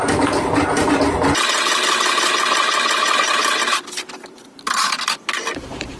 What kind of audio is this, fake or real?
fake